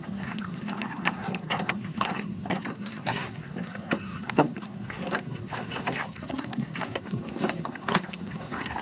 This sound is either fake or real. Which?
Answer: fake